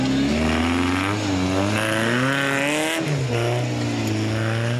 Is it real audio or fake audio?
real